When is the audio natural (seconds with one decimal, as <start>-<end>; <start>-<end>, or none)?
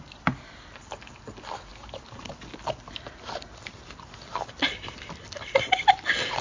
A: 0.0-1.7; 2.3-6.4